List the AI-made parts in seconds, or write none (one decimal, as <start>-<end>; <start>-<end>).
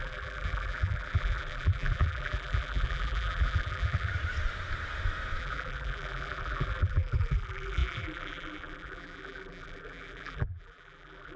0.0-4.1; 5.4-11.4